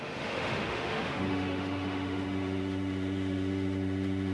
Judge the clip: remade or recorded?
remade